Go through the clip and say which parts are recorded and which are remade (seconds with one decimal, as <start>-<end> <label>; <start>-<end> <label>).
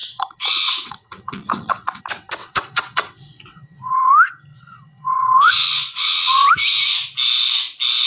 0.0-2.0 remade; 2.0-2.4 recorded; 2.4-4.1 remade; 4.1-4.5 recorded; 4.5-6.5 remade; 6.5-8.1 recorded